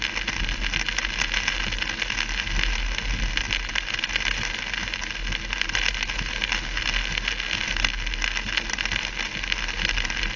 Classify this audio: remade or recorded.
recorded